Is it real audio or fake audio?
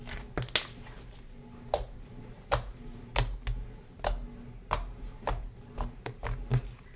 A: real